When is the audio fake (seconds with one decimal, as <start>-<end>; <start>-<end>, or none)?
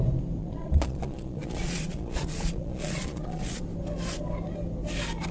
0.4-3.6